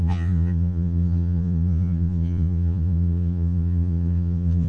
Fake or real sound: fake